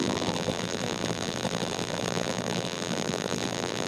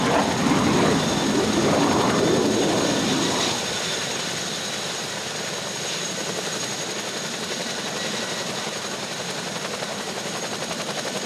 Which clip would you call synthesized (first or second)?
first